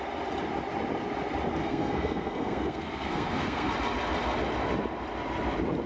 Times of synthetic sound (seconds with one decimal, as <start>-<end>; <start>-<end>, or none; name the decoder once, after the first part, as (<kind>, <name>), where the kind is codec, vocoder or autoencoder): 1.6-3.7 (codec, SNAC)